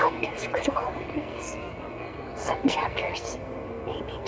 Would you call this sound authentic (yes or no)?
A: no